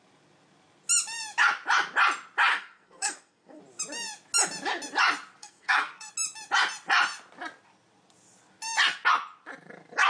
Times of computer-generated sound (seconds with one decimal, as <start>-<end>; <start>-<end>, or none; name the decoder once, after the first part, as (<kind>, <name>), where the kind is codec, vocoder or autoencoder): 2.5-3.6 (codec, SNAC); 5.4-6.1